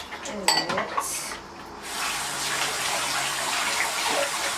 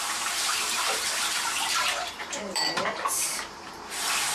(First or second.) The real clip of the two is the first